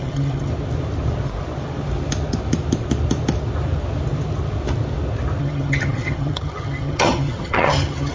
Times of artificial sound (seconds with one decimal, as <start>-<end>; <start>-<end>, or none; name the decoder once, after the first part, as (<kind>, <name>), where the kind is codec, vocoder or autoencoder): 0.0-0.5 (vocoder, HiFi-GAN); 5.4-8.1